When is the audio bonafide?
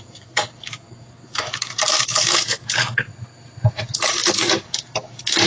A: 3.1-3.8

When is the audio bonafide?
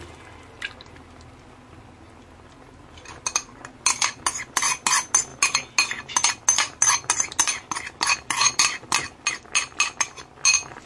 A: 0.0-10.9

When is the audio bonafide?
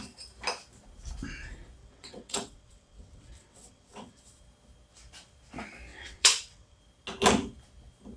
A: 0.0-1.8; 4.2-5.9; 6.8-8.2